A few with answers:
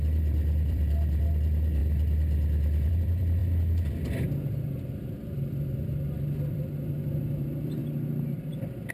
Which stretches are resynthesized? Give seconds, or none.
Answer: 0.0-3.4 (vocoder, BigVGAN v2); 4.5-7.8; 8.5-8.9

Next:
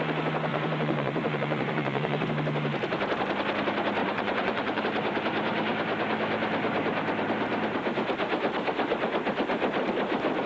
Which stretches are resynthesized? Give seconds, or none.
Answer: 0.5-2.3 (vocoder, Vocos); 4.0-4.8